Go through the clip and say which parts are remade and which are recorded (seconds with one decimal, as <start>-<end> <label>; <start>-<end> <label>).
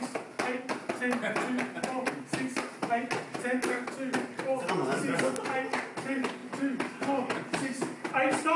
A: 0.0-8.6 recorded